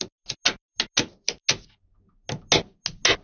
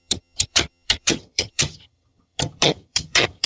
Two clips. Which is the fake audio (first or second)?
second